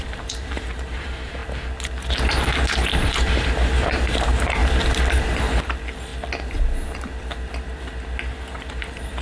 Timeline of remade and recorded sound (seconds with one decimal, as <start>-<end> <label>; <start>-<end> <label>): 0.0-1.4 remade; 1.4-3.1 recorded; 3.1-4.6 remade; 4.6-5.1 recorded; 5.1-6.1 remade; 6.1-8.7 recorded; 8.7-9.2 remade